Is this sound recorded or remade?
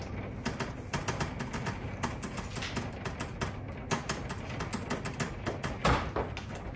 recorded